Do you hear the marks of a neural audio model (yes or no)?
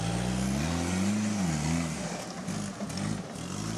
no